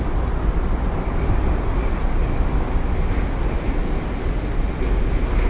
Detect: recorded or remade recorded